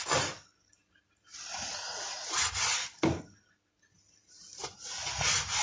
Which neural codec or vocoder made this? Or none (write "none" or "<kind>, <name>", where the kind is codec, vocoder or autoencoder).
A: none